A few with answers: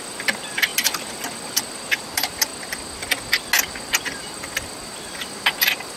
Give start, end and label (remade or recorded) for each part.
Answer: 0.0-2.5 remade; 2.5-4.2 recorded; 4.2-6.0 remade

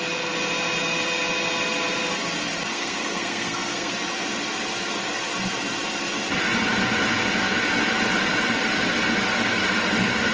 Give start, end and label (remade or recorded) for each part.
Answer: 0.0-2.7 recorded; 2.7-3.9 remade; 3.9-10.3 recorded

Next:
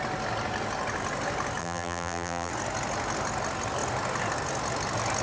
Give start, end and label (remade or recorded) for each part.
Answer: 0.0-1.6 recorded; 1.6-2.5 remade; 2.5-5.2 recorded

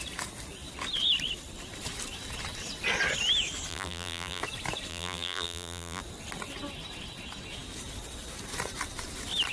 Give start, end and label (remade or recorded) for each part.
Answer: 0.0-3.7 recorded; 3.7-4.4 remade; 4.4-4.9 recorded; 4.9-6.0 remade; 6.0-9.5 recorded

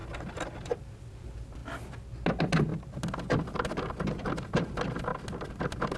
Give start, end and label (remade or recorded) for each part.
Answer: 0.0-6.0 recorded

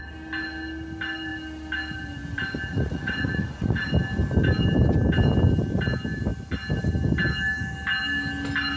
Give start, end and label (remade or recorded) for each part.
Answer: 0.0-2.7 recorded; 2.7-3.9 remade; 3.9-8.8 recorded

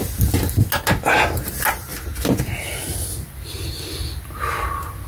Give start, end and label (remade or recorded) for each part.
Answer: 0.0-5.1 recorded